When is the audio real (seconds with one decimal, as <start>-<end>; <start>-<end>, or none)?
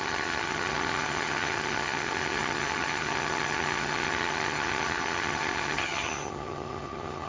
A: none